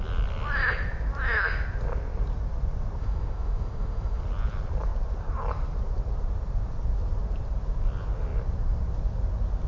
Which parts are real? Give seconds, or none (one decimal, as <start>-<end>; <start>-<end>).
0.0-3.0; 4.2-9.7